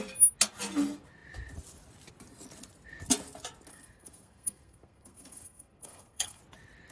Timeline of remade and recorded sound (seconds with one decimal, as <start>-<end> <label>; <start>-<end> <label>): 0.0-3.7 recorded; 3.7-6.4 remade; 6.4-6.9 recorded

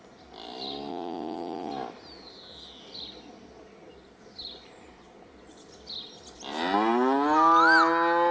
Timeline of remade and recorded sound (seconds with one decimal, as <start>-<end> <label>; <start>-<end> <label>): 0.0-0.9 recorded; 0.9-1.7 remade; 1.7-8.3 recorded

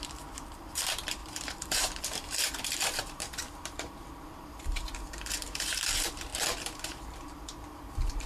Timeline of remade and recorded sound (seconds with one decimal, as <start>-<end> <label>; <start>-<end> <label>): 0.0-8.3 remade

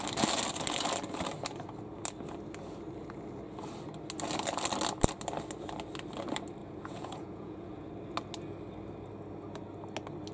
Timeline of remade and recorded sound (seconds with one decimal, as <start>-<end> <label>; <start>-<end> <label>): 0.0-6.6 recorded; 6.6-7.9 remade; 7.9-10.3 recorded

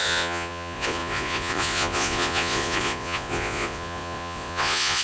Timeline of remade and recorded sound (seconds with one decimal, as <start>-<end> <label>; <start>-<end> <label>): 0.0-5.0 remade